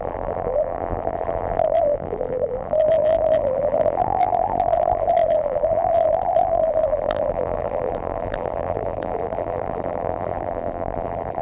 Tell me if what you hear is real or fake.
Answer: fake